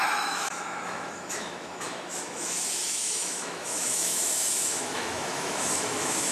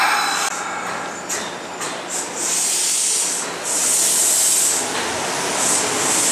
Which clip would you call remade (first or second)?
first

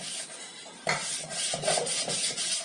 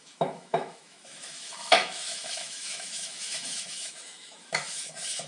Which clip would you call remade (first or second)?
second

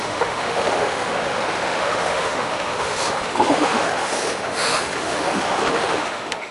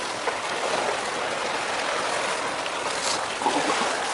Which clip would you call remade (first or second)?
first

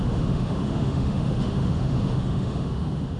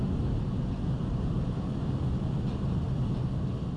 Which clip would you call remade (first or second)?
first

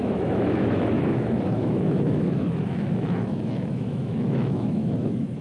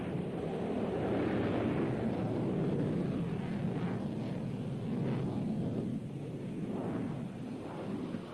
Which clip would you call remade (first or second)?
first